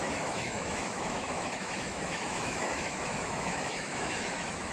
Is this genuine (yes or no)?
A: no